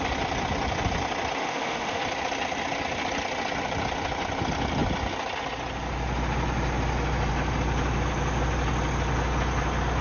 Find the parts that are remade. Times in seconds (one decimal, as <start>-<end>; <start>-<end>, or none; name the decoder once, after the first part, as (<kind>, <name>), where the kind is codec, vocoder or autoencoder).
1.4-2.0 (autoencoder, DAC-VAE)